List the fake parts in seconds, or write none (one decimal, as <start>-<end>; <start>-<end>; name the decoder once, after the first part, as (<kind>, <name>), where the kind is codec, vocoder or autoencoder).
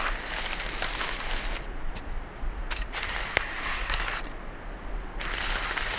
3.3-4.0 (codec, SNAC)